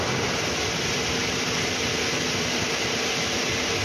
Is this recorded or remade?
recorded